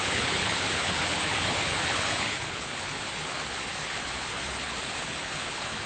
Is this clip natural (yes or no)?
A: no